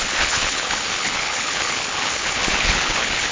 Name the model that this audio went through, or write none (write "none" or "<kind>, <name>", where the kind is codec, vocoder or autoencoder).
codec, HILCodec